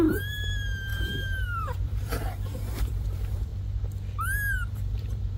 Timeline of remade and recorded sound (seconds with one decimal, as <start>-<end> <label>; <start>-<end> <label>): 0.0-3.5 remade; 3.5-4.5 recorded; 4.5-5.4 remade

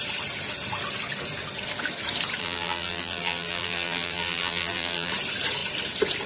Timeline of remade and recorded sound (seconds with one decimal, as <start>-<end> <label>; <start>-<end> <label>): 0.0-2.4 recorded; 2.4-5.1 remade; 5.1-6.3 recorded

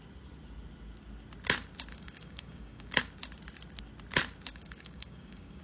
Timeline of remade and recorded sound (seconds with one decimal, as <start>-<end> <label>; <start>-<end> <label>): 0.0-1.9 recorded; 1.9-3.0 remade; 3.0-4.5 recorded; 4.5-5.6 remade